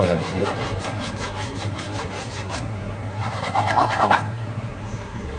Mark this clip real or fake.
fake